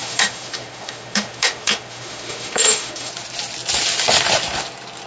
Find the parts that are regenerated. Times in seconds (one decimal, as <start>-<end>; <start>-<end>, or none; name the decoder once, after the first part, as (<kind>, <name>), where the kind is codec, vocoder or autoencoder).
0.0-3.1 (autoencoder, DAC-VAE)